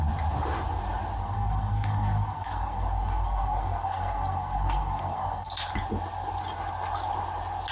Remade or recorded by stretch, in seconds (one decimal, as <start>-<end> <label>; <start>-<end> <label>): 0.0-1.2 recorded; 1.2-5.5 remade; 5.5-7.7 recorded